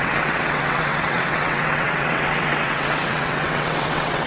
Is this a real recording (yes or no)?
no